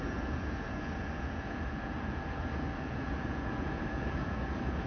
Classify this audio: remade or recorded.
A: remade